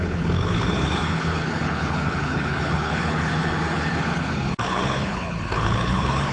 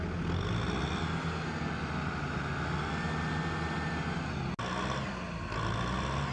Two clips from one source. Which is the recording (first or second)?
second